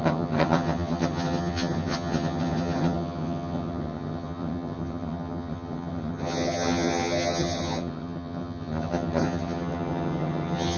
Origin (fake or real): fake